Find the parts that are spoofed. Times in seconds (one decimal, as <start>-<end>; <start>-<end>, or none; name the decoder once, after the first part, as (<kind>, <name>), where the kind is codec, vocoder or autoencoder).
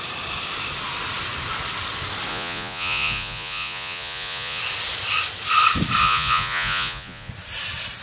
2.3-4.6 (vocoder, Vocos); 6.0-7.3